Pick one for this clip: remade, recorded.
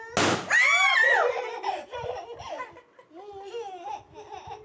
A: recorded